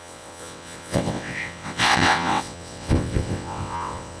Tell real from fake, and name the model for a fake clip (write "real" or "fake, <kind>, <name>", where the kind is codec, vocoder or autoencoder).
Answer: fake, vocoder, WaveNeXt